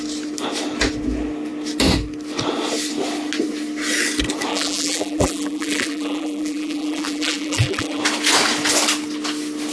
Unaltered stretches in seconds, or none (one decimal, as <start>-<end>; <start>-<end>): 0.0-4.5; 8.0-9.7

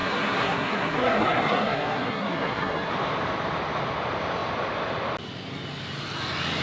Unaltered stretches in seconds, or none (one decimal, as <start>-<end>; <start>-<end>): 2.9-6.6